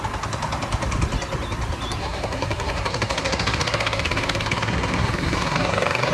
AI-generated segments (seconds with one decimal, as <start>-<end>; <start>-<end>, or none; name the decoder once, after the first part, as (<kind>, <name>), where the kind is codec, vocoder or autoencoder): 2.0-6.1 (codec, SNAC)